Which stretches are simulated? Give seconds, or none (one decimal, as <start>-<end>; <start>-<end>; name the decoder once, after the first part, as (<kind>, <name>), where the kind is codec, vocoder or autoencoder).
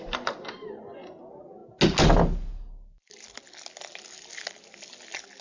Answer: none